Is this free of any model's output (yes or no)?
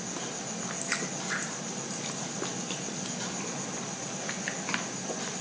yes